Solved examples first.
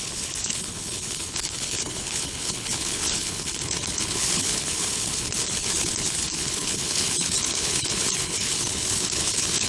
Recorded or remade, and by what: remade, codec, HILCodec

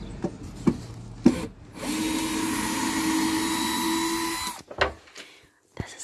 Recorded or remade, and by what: recorded